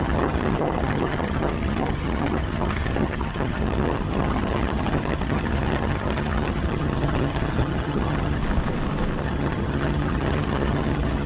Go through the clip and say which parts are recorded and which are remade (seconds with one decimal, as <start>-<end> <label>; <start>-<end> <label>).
0.0-8.4 remade; 8.4-9.2 recorded; 9.2-11.3 remade